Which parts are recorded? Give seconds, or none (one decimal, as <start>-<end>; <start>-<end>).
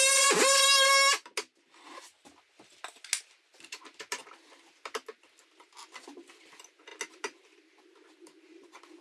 0.0-9.0